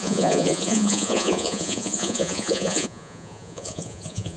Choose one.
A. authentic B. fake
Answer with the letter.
B